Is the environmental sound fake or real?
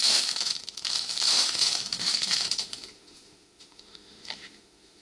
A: fake